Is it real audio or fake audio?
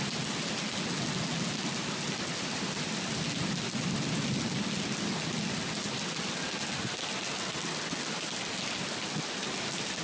real